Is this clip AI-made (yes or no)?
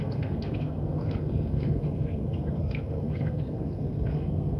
yes